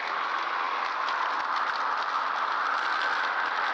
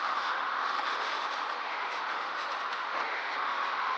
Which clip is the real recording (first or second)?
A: first